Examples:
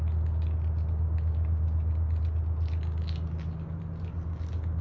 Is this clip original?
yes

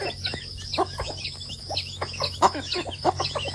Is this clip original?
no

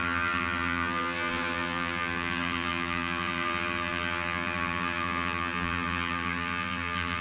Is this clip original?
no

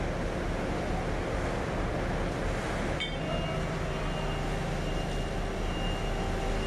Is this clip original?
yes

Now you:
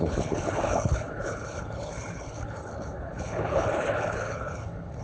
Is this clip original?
no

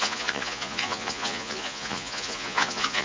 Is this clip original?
no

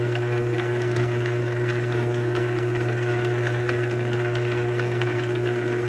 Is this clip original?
no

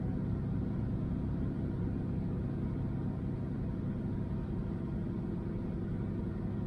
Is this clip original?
yes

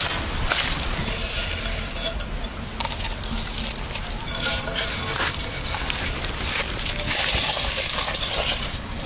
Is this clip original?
yes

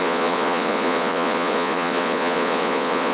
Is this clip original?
no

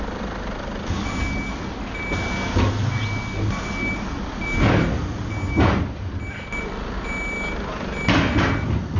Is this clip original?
yes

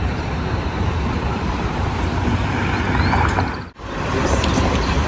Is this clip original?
no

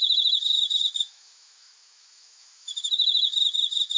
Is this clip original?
no